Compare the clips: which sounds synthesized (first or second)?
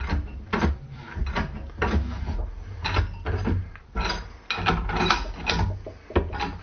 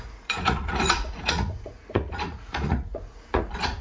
second